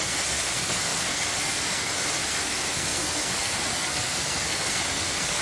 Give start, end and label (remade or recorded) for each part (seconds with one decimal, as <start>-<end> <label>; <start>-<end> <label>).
0.0-5.4 remade